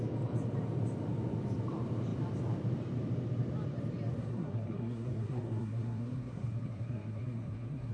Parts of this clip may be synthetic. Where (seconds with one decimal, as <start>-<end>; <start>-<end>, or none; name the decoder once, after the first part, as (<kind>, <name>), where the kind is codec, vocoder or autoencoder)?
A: 4.2-7.9 (codec, SNAC)